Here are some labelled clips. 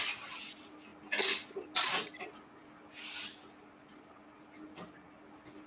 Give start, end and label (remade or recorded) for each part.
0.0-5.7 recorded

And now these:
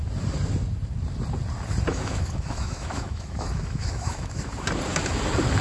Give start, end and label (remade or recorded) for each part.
0.0-1.9 recorded; 1.9-4.5 remade; 4.5-5.6 recorded

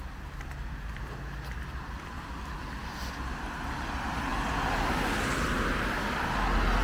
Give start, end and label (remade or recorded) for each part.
0.0-6.8 recorded

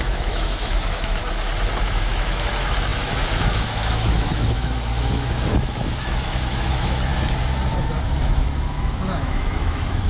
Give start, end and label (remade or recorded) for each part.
0.0-1.2 remade; 1.2-1.8 recorded; 1.8-7.1 remade; 7.1-8.2 recorded; 8.2-10.1 remade

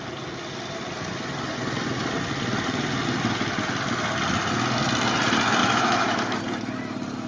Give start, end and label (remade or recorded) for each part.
0.0-5.6 recorded; 5.6-6.4 remade; 6.4-7.3 recorded